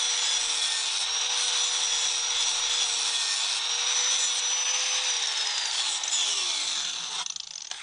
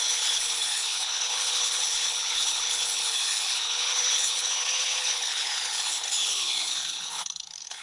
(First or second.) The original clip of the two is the first